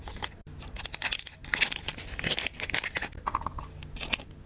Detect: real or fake real